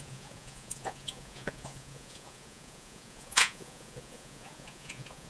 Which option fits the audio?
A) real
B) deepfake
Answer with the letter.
B